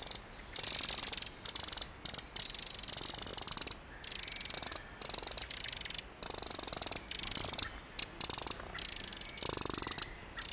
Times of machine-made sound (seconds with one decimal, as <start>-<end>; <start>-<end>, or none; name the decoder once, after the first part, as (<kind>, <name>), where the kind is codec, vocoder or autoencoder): none